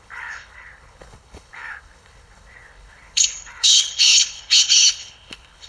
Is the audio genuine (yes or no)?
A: no